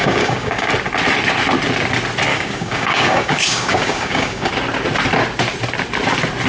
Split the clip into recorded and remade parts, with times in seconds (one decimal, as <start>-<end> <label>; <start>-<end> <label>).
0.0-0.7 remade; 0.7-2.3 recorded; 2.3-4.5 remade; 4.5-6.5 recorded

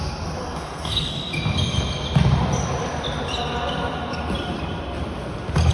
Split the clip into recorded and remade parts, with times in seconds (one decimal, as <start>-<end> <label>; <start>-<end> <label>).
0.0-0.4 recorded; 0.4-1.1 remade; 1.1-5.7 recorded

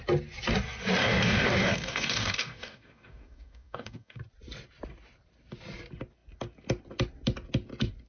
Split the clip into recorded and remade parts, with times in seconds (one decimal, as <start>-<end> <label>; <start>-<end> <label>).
0.0-1.0 recorded; 1.0-4.2 remade; 4.2-8.1 recorded

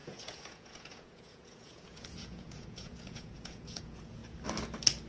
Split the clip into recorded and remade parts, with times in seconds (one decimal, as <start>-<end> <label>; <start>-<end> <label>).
0.0-4.2 remade; 4.2-5.1 recorded